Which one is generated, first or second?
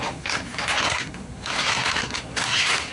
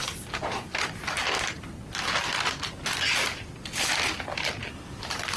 first